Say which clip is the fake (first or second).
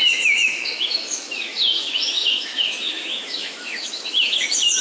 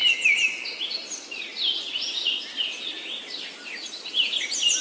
first